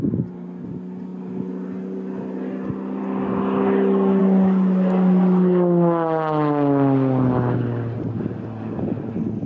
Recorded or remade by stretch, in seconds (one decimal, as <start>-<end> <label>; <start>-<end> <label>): 0.0-9.5 recorded